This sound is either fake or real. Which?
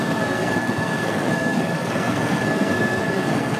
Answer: fake